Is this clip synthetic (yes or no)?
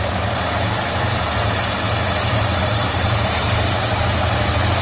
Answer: yes